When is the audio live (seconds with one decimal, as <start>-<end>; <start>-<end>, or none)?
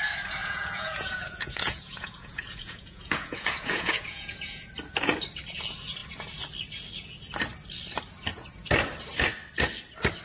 0.0-0.4; 4.7-10.2